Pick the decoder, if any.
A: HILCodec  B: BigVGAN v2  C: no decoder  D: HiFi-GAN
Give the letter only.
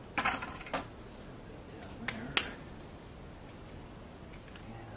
C